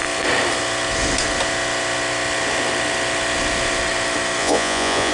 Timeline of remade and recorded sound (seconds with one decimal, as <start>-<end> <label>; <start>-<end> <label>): 0.0-4.4 recorded; 4.4-5.1 remade